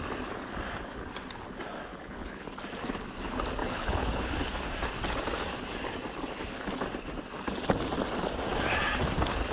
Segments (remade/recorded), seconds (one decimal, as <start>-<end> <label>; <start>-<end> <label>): 0.0-1.9 recorded; 1.9-2.4 remade; 2.4-3.6 recorded; 3.6-4.3 remade; 4.3-9.5 recorded